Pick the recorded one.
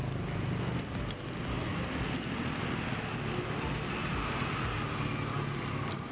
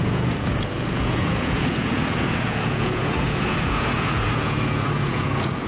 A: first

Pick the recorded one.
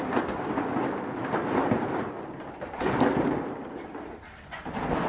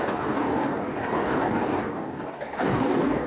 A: first